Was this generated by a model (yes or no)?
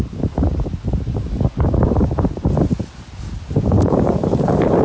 yes